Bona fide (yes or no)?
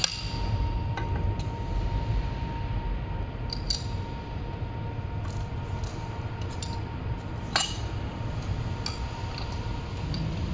yes